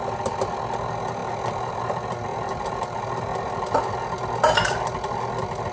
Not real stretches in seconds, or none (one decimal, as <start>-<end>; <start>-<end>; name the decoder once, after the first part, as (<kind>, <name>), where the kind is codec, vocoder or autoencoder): 1.2-1.8 (vocoder, BigVGAN v2); 2.3-3.5